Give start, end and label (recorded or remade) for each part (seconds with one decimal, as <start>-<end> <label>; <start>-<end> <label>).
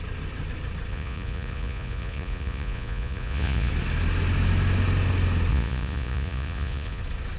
0.0-0.9 recorded; 0.9-3.7 remade; 3.7-5.5 recorded; 5.5-7.0 remade; 7.0-7.4 recorded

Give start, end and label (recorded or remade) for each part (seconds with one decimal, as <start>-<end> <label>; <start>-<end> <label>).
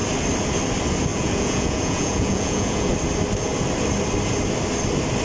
0.0-1.1 recorded; 1.1-2.9 remade; 2.9-5.2 recorded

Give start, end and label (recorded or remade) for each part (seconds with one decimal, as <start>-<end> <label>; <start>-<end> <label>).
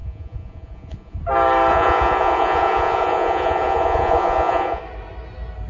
0.0-1.2 remade; 1.2-1.7 recorded; 1.7-4.8 remade; 4.8-5.7 recorded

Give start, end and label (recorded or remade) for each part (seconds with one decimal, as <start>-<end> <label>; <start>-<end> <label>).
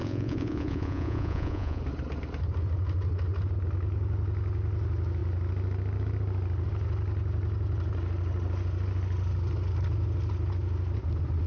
0.0-1.8 remade; 1.8-11.5 recorded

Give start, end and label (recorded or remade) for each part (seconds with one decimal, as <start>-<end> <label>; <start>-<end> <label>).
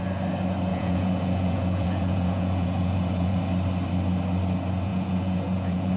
0.0-0.7 recorded; 0.7-3.4 remade; 3.4-4.9 recorded; 4.9-6.0 remade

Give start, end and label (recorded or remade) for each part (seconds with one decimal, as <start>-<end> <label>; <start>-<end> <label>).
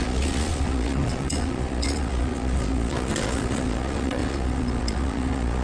0.0-5.6 remade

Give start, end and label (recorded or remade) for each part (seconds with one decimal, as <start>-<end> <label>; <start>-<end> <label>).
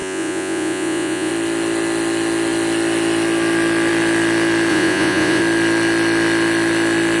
0.0-1.3 remade; 1.3-4.7 recorded; 4.7-5.4 remade; 5.4-7.2 recorded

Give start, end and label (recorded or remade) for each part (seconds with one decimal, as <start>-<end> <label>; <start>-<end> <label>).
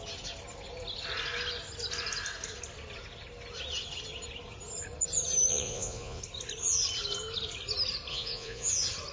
0.0-5.5 recorded; 5.5-6.2 remade; 6.2-8.1 recorded; 8.1-8.7 remade; 8.7-9.1 recorded